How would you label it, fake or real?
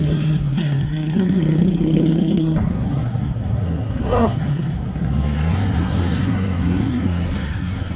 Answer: fake